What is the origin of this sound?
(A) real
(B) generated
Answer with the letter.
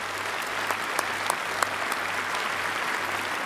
A